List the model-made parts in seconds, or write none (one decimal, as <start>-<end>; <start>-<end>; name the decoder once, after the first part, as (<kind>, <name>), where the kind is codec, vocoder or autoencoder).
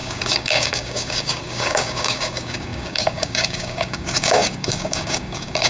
0.0-5.7 (codec, DAC)